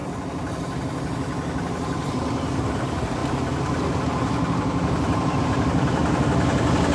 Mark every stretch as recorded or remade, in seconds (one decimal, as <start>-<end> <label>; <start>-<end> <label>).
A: 0.0-2.7 recorded; 2.7-3.2 remade; 3.2-5.4 recorded; 5.4-6.0 remade; 6.0-6.9 recorded

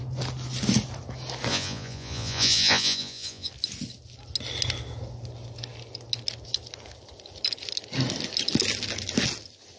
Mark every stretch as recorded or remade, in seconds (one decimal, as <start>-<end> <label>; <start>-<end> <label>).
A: 0.0-1.5 recorded; 1.5-3.5 remade; 3.5-9.8 recorded

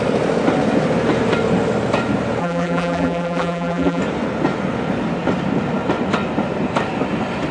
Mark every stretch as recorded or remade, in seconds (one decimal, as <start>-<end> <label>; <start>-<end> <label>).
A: 0.0-2.4 recorded; 2.4-4.0 remade; 4.0-7.5 recorded

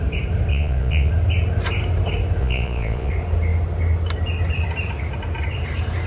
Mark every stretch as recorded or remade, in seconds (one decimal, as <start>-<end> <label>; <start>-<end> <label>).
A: 0.0-0.5 recorded; 0.5-1.1 remade; 1.1-2.4 recorded; 2.4-3.1 remade; 3.1-6.1 recorded